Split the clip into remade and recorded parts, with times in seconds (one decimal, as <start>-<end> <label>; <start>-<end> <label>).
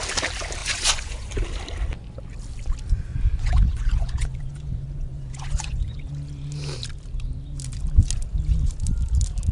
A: 0.0-0.6 recorded; 0.6-1.3 remade; 1.3-3.1 recorded; 3.1-6.1 remade; 6.1-9.5 recorded